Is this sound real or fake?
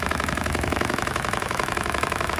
fake